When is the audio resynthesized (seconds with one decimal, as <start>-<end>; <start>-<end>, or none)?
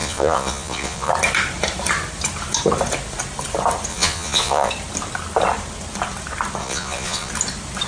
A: 0.0-1.1; 3.9-4.7; 6.6-7.3